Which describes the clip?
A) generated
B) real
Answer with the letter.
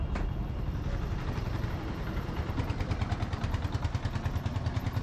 B